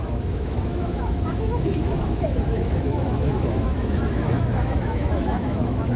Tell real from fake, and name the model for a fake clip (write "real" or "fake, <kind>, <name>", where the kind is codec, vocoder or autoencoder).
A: fake, autoencoder, DAC-VAE